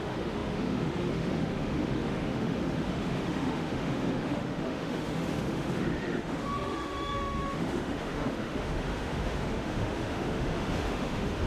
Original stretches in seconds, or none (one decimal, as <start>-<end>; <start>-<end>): none